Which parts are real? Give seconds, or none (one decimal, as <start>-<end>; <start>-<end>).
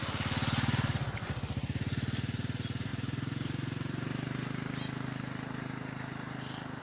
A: 0.0-6.8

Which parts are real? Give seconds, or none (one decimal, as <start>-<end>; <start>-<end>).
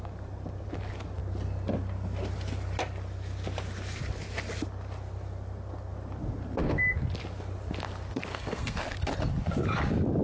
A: 0.0-8.3; 8.8-10.2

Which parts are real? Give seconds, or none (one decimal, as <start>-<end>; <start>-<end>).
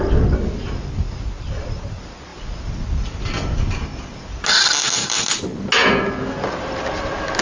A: 0.0-7.4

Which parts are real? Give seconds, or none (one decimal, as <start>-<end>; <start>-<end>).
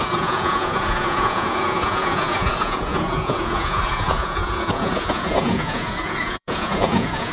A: none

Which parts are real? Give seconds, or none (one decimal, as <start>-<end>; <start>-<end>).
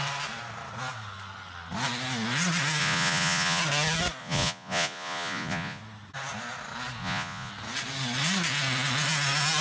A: 0.0-2.8; 3.6-4.2; 5.8-7.0; 7.5-9.6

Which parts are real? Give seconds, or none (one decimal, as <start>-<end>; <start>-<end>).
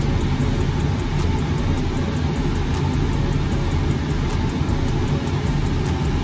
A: 0.0-6.2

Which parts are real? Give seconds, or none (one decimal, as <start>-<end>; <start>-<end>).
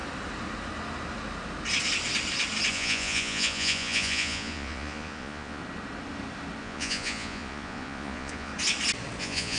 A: 0.0-2.7; 5.6-6.6; 8.5-9.2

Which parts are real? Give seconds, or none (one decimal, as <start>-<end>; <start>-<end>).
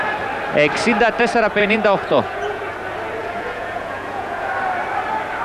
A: 0.0-1.6; 2.7-3.2; 4.5-5.4